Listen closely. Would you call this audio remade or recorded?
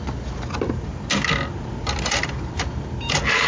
recorded